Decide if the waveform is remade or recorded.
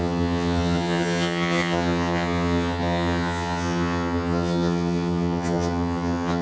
remade